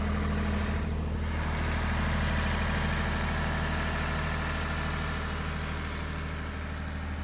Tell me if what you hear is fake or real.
real